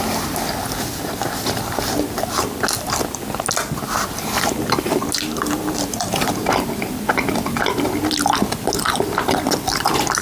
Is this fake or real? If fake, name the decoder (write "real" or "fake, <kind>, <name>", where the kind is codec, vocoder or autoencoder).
real